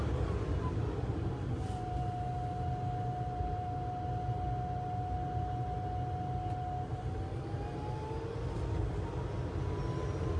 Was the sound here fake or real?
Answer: real